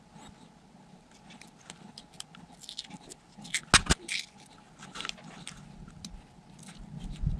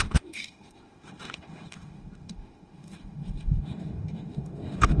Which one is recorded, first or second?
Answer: first